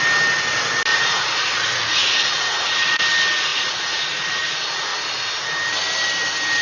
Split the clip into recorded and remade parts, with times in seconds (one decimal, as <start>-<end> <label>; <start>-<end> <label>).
0.0-0.9 recorded; 0.9-3.0 remade; 3.0-3.5 recorded; 3.5-4.5 remade; 4.5-6.6 recorded